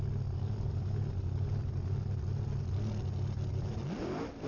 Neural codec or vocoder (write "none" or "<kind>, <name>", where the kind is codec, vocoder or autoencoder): none